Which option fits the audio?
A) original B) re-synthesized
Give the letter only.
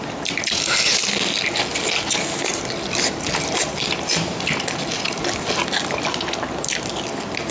A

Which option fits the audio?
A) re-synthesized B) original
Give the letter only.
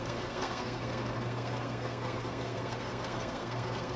A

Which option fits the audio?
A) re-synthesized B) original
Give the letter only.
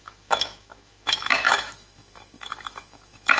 A